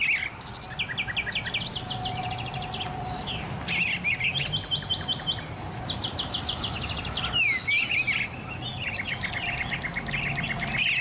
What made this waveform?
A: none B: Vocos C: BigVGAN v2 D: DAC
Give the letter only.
A